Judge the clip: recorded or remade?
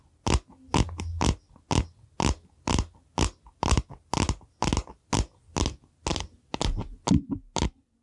recorded